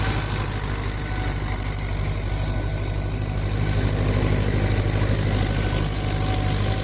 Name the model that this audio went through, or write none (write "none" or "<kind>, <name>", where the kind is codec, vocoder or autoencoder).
none